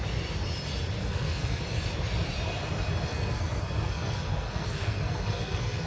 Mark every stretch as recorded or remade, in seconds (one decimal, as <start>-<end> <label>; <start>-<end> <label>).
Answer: 0.0-1.0 recorded; 1.0-1.6 remade; 1.6-3.1 recorded; 3.1-5.9 remade